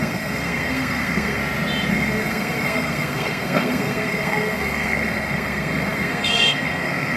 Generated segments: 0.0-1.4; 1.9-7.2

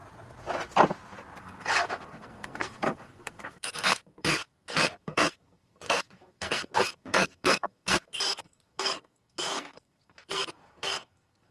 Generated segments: 1.4-11.5

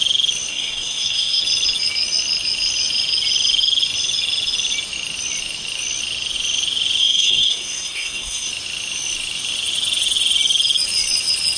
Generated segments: 0.5-1.4; 7.0-8.5

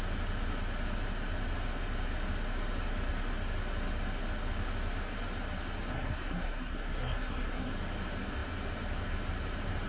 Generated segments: 5.9-7.7

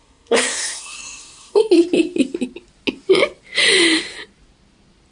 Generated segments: 0.0-1.6

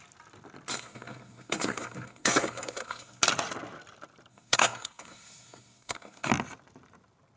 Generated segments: 0.7-3.2; 4.3-6.3

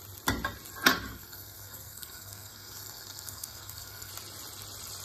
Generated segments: 1.1-4.1

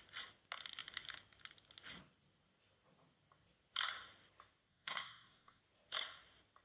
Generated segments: 4.7-5.6